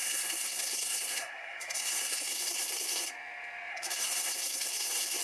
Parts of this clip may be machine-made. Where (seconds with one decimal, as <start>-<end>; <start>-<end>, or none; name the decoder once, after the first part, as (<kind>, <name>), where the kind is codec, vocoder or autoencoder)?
0.0-3.1 (codec, SNAC); 3.7-5.2

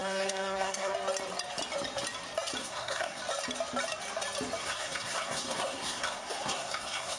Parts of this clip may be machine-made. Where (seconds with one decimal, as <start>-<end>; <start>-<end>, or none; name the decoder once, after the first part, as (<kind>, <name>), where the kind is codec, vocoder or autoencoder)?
0.0-0.9 (codec, SNAC); 2.6-3.2; 4.6-7.2

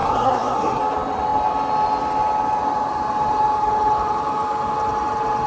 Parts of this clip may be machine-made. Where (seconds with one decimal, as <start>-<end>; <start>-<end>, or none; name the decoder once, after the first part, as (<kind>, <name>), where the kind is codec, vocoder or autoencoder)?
0.0-0.8 (codec, SNAC)

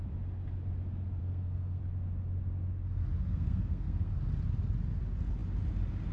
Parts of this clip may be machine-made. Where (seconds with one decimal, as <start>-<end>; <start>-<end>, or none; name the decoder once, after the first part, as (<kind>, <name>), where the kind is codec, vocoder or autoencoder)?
1.2-1.8 (codec, SNAC); 3.2-4.1

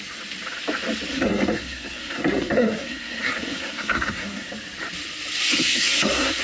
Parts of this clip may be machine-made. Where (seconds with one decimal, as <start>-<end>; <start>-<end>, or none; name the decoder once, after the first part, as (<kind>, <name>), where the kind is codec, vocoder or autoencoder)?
1.1-4.5 (codec, SNAC); 5.5-6.4

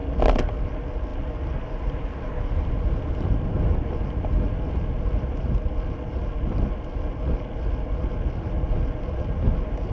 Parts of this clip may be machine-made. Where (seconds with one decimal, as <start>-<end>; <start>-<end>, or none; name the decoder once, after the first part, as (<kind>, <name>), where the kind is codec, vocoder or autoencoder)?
none